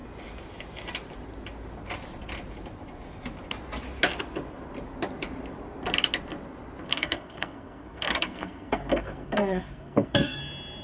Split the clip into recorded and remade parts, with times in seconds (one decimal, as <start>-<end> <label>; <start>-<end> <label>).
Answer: 0.0-6.9 recorded; 6.9-10.4 remade; 10.4-10.8 recorded

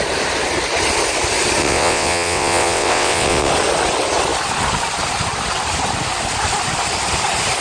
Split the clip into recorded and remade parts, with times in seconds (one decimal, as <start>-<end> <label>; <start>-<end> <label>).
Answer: 0.0-1.6 recorded; 1.6-3.5 remade; 3.5-7.6 recorded

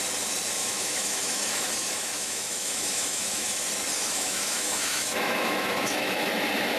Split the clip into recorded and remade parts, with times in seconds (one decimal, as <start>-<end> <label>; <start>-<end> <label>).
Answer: 0.0-0.6 recorded; 0.6-3.6 remade; 3.6-4.0 recorded; 4.0-6.3 remade; 6.3-6.8 recorded

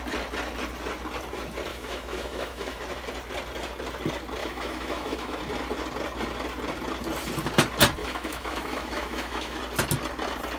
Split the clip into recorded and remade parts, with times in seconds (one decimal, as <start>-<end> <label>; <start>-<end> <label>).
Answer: 0.0-1.7 recorded; 1.7-2.8 remade; 2.8-4.4 recorded; 4.4-5.4 remade; 5.4-8.0 recorded; 8.0-9.6 remade; 9.6-10.6 recorded

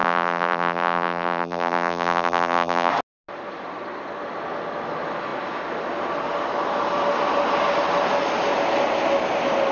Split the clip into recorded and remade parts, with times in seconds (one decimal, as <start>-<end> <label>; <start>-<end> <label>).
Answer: 0.0-2.9 remade; 2.9-9.7 recorded

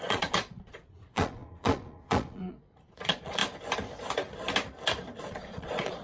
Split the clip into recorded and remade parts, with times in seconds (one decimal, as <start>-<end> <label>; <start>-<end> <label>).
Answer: 0.0-3.4 remade; 3.4-5.3 recorded; 5.3-6.0 remade

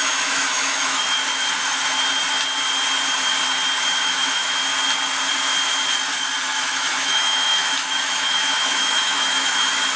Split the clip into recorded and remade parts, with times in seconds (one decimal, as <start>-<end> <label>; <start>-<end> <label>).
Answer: 0.0-1.3 remade; 1.3-3.9 recorded; 3.9-4.6 remade; 4.6-6.4 recorded; 6.4-10.0 remade

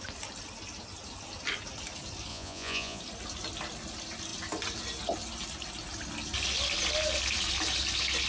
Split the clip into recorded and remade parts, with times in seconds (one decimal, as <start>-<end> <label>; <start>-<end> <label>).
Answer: 0.0-2.3 recorded; 2.3-3.0 remade; 3.0-8.3 recorded